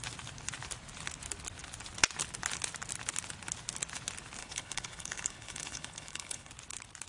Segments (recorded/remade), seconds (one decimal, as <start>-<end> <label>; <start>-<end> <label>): 0.0-4.4 recorded; 4.4-6.5 remade; 6.5-7.1 recorded